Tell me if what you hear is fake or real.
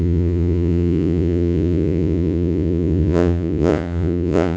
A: fake